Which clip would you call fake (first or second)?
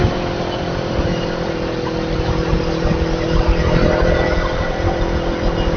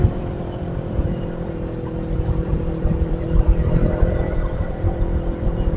second